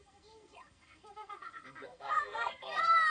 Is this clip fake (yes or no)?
yes